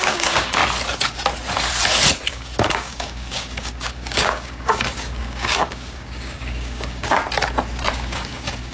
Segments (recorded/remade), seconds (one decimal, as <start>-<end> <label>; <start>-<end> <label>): 0.0-0.6 remade; 0.6-2.3 recorded; 2.3-7.2 remade; 7.2-7.9 recorded; 7.9-8.7 remade